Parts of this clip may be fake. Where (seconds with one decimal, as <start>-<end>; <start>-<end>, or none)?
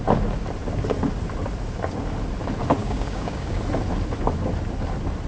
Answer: 2.8-3.6